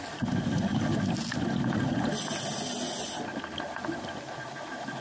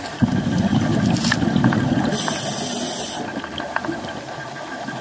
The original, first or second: first